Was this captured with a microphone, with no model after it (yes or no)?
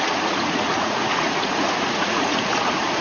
no